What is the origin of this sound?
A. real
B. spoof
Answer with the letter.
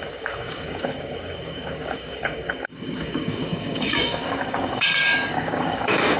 B